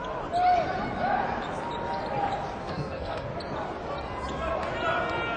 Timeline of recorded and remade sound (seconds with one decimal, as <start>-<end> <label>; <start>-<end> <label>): 0.0-2.6 recorded; 2.6-3.3 remade; 3.3-5.4 recorded